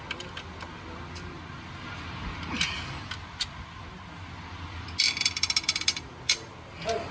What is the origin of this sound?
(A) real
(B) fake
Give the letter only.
A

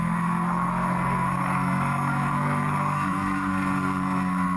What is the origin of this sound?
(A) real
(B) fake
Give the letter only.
B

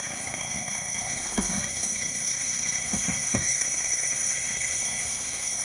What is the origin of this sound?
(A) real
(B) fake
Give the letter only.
B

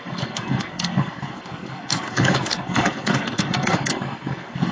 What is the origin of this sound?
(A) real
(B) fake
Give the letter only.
B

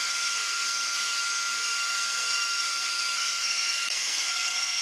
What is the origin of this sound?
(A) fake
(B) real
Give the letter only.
A